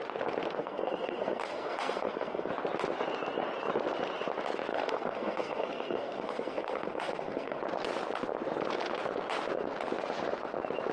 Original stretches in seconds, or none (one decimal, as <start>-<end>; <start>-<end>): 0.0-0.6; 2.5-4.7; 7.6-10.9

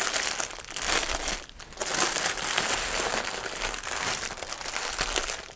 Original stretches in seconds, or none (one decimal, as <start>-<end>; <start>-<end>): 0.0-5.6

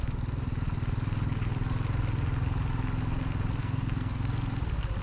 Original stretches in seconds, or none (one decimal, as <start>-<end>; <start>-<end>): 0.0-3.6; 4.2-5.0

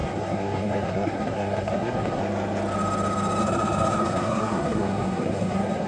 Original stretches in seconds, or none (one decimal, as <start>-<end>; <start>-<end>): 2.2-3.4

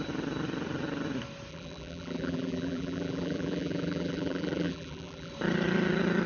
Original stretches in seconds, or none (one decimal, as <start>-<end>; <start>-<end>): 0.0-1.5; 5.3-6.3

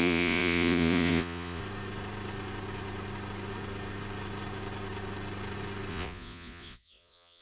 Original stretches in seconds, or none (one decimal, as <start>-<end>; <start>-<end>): 1.6-5.9

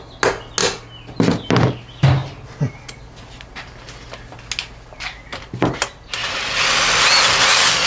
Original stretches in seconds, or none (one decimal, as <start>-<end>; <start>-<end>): 0.0-7.9